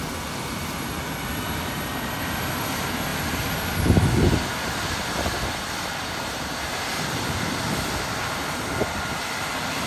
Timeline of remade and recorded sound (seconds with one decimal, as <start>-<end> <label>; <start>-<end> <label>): 0.0-9.9 recorded